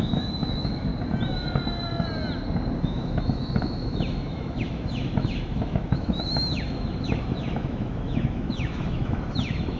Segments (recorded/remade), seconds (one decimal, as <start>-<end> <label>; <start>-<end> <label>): 0.0-0.9 remade; 0.9-2.8 recorded; 2.8-9.8 remade

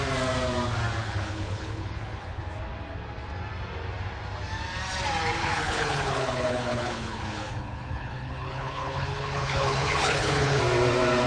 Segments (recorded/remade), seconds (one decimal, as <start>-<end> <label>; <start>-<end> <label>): 0.0-1.0 recorded; 1.0-2.4 remade; 2.4-5.4 recorded; 5.4-10.6 remade; 10.6-11.3 recorded

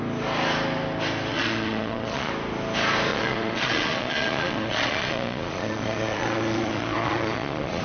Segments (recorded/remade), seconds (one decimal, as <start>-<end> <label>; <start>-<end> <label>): 0.0-1.3 recorded; 1.3-2.3 remade; 2.3-3.1 recorded; 3.1-7.8 remade

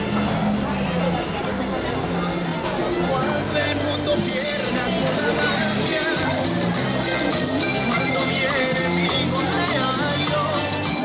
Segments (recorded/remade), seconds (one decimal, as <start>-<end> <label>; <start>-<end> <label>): 0.0-11.0 recorded

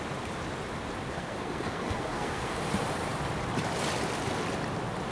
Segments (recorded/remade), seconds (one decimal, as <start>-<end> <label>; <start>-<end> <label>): 0.0-1.1 recorded; 1.1-2.6 remade; 2.6-5.1 recorded